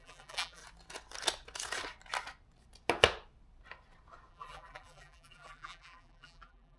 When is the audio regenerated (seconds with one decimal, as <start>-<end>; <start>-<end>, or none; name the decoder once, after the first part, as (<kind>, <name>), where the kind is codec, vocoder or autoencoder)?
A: 0.0-0.6 (vocoder, BigVGAN v2); 4.3-6.8